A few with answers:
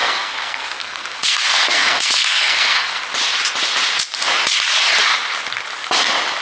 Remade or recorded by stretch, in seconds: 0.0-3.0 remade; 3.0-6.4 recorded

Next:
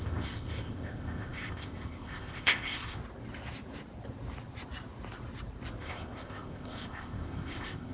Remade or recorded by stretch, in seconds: 0.0-3.0 remade; 3.0-5.8 recorded; 5.8-7.9 remade

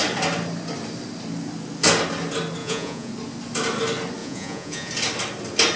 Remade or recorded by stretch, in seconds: 0.0-2.6 recorded; 2.6-3.1 remade; 3.1-4.2 recorded; 4.2-4.9 remade; 4.9-5.8 recorded

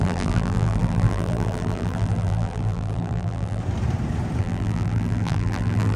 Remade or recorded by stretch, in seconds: 0.0-3.6 remade; 3.6-4.4 recorded; 4.4-6.0 remade

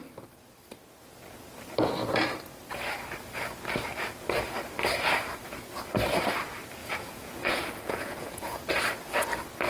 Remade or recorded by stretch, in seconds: 0.0-6.8 recorded; 6.8-8.7 remade; 8.7-9.7 recorded